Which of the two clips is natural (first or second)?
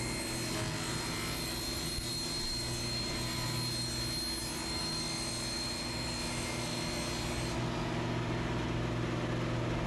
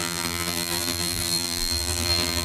first